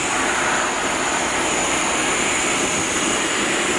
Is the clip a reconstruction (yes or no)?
no